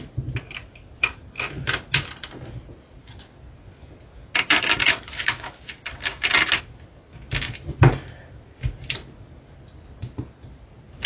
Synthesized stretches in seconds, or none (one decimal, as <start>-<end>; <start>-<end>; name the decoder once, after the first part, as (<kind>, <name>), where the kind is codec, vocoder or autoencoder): 4.8-5.6 (autoencoder, DAC-VAE)